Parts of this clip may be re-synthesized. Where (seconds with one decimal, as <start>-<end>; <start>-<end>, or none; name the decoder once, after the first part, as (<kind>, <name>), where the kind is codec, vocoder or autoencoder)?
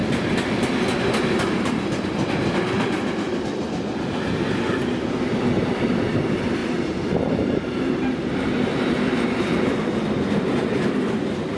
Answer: none